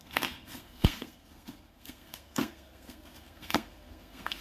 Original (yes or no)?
no